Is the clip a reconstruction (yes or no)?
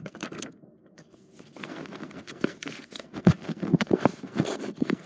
yes